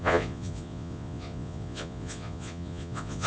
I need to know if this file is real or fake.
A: fake